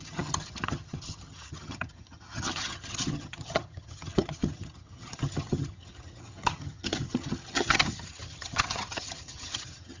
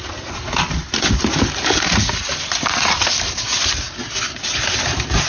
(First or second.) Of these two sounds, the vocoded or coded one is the first